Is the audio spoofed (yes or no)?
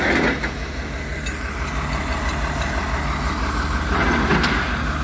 no